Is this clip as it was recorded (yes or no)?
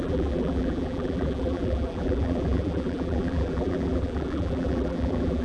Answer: no